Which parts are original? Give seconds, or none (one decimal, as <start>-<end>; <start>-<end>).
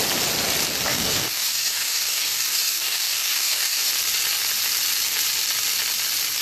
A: 0.0-0.9; 3.9-6.4